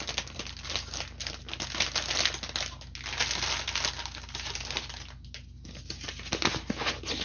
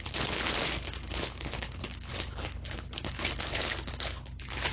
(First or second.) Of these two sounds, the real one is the first